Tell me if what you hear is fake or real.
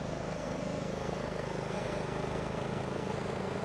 fake